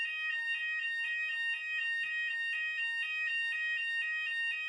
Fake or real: real